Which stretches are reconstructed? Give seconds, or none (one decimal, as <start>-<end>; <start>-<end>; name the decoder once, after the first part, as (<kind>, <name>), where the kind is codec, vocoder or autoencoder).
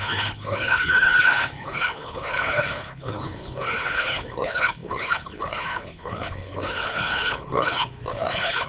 0.0-8.7 (codec, HILCodec)